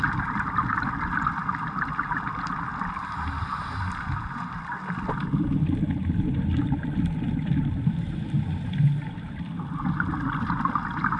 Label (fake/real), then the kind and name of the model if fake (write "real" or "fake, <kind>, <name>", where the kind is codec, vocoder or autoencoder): real